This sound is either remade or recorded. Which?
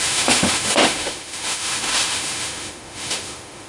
remade